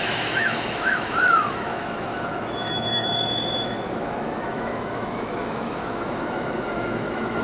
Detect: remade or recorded remade